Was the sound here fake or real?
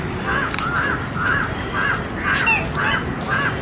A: real